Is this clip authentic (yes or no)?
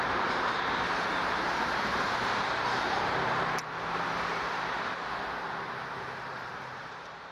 no